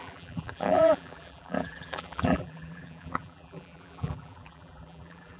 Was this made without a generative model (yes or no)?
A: no